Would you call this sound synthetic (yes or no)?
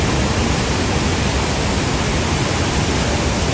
no